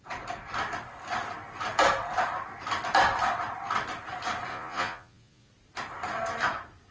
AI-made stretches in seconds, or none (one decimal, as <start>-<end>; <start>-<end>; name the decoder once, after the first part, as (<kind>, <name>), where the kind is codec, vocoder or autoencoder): 4.5-5.5 (vocoder, Vocos)